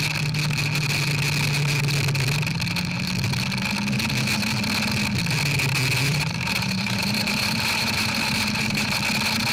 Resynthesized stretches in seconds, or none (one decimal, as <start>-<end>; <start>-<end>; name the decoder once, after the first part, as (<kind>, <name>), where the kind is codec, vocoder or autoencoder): 6.0-9.0 (vocoder, BigVGAN v2)